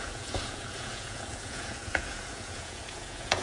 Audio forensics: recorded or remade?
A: remade